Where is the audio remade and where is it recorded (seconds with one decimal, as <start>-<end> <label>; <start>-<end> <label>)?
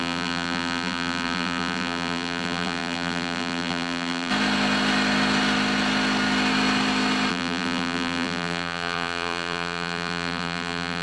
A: 0.0-4.3 remade; 4.3-7.3 recorded; 7.3-11.0 remade